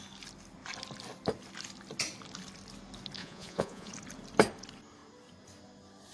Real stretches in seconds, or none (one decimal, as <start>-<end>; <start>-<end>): 0.0-3.2; 3.9-6.1